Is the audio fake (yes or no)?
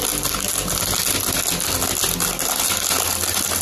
no